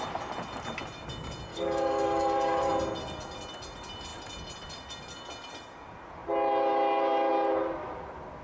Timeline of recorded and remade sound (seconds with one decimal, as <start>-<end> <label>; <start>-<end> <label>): 0.0-1.5 recorded; 1.5-2.7 remade; 2.7-8.4 recorded